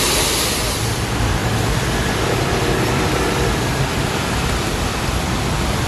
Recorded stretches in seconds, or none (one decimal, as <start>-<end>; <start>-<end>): 1.4-2.9